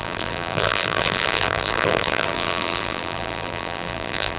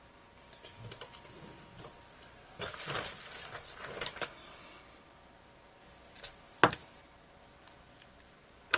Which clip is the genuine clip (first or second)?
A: second